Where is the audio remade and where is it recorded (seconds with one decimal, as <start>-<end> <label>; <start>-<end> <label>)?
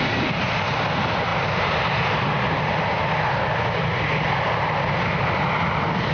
0.0-6.1 recorded